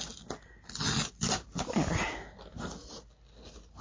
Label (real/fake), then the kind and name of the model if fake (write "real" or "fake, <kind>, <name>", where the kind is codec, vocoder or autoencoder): real